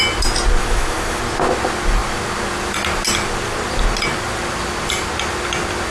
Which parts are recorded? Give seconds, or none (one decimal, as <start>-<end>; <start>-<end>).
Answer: 0.0-0.6; 1.2-5.9